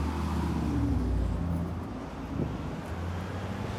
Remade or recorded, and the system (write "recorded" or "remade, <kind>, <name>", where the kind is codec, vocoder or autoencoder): recorded